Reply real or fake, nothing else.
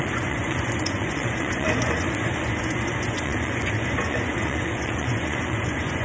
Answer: fake